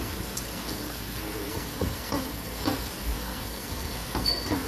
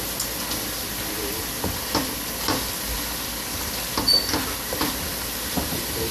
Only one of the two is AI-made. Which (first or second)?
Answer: first